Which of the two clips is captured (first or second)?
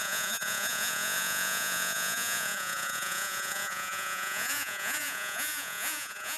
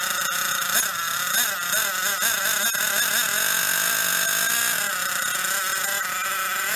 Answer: second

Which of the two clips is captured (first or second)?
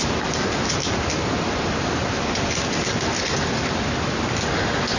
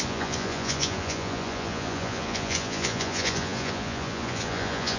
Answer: first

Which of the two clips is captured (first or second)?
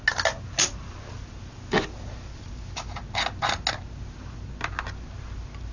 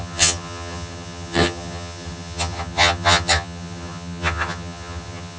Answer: first